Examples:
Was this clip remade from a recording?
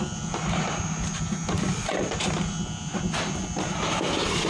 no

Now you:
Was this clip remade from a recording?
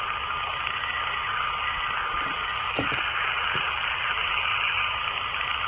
no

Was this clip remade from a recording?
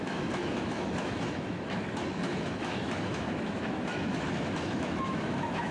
yes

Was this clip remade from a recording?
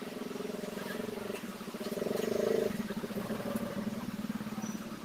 no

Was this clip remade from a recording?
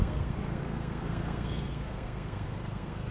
yes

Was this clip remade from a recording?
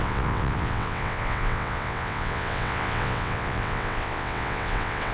yes